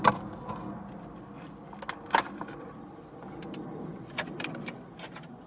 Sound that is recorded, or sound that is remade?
recorded